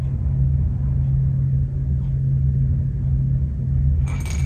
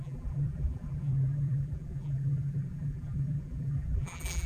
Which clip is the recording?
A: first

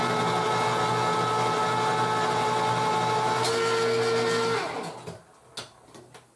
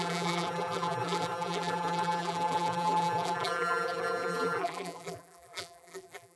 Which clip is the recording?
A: first